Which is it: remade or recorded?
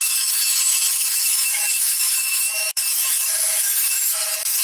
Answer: remade